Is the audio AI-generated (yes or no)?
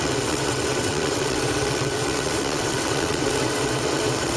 yes